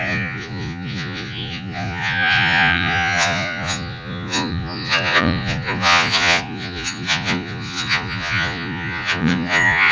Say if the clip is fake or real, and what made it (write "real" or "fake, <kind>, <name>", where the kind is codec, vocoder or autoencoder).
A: fake, vocoder, Vocos